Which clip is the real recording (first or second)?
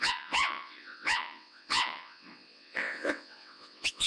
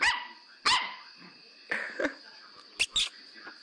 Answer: second